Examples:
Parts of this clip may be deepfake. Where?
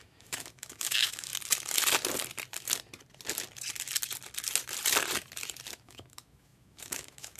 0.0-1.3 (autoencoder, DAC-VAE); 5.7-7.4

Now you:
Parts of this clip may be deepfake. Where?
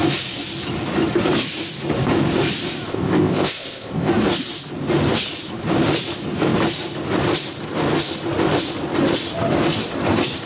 2.9-4.1 (codec, ZipCodec)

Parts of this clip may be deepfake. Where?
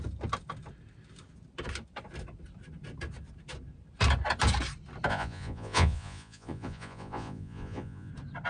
5.1-8.1 (vocoder, Vocos)